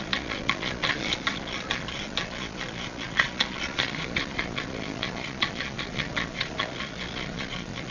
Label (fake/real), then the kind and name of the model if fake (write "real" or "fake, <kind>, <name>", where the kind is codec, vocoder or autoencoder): fake, vocoder, Vocos